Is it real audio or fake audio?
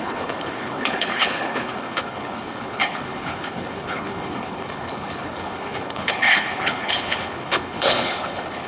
fake